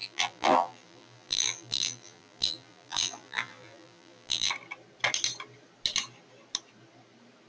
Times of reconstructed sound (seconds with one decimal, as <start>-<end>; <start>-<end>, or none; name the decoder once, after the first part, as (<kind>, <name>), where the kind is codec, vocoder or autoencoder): 0.0-4.5 (vocoder, BigVGAN v2)

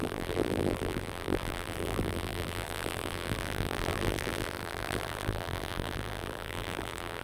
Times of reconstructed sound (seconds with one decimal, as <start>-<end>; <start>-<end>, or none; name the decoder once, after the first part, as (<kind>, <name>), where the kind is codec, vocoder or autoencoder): 0.0-7.2 (vocoder, BigVGAN v2)

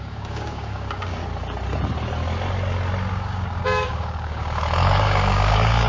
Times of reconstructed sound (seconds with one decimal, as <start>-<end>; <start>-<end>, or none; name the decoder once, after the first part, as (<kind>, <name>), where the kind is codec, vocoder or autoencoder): 0.0-1.2 (codec, DAC); 3.1-5.9